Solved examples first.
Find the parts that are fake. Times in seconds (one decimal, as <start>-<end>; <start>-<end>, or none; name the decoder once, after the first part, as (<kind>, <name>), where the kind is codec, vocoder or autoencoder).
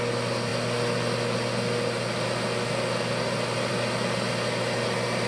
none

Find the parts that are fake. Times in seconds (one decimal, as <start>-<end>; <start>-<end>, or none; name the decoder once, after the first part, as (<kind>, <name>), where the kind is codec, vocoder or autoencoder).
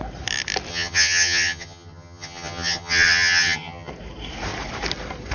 0.7-3.9 (vocoder, HiFi-GAN)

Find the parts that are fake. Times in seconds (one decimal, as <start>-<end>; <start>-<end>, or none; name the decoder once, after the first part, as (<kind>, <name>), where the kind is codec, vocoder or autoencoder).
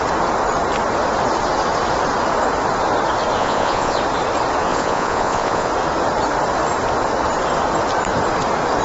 3.4-4.0 (vocoder, Vocos); 4.7-5.7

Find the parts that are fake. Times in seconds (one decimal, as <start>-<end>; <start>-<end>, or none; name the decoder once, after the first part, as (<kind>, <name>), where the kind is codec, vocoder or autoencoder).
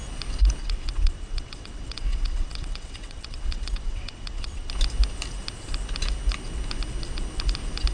0.6-4.7 (vocoder, WaveNeXt)